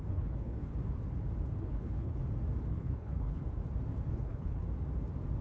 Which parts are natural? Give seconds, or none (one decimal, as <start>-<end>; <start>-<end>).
0.7-1.6; 2.2-2.7; 3.4-4.1; 4.6-5.4